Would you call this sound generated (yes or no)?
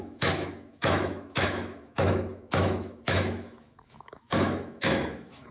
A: yes